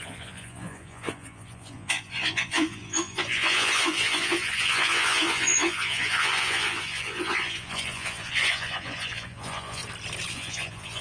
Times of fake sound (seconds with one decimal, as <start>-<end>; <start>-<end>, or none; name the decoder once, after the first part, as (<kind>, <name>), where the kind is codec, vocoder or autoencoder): 0.0-9.8 (vocoder, Vocos); 10.3-11.0